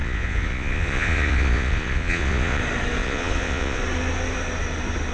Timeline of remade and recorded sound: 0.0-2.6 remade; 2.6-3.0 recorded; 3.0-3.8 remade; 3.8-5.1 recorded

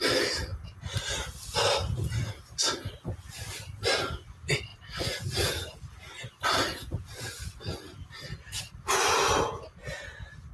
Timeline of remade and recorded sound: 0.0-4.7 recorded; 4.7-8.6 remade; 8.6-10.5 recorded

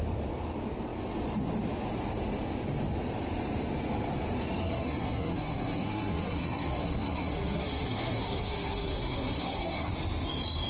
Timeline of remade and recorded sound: 0.0-4.6 recorded; 4.6-9.9 remade; 9.9-10.7 recorded

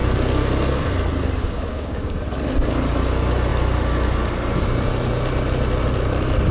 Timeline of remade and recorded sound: 0.0-1.4 recorded; 1.4-2.1 remade; 2.1-6.5 recorded

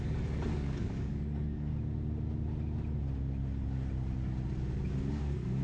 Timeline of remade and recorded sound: 0.0-1.7 remade; 1.7-5.1 recorded; 5.1-5.6 remade